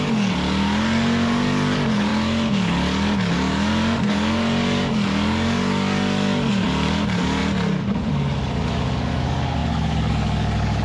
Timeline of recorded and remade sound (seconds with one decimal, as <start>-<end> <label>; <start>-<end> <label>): 0.0-10.8 remade